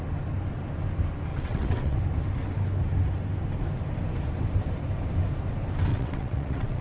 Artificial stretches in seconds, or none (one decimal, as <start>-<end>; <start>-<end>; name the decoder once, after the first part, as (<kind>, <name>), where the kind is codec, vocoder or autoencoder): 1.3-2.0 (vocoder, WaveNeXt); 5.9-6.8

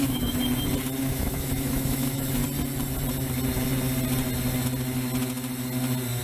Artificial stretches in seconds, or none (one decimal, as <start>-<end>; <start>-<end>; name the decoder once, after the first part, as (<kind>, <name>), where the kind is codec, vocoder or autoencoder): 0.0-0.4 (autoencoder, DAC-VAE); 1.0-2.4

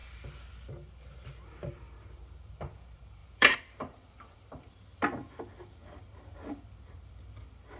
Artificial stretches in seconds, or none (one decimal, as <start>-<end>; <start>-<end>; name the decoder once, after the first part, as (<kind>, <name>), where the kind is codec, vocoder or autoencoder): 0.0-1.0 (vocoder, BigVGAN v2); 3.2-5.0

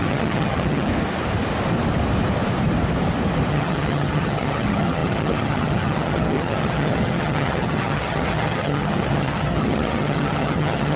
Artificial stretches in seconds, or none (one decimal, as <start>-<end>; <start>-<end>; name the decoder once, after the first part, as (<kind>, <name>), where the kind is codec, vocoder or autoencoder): 0.0-0.9 (vocoder, HiFi-GAN); 3.5-11.0

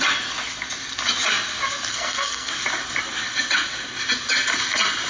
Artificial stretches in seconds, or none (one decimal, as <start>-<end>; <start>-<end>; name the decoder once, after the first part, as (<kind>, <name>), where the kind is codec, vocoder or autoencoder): 1.9-2.5 (codec, SNAC)